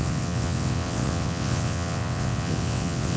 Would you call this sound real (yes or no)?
no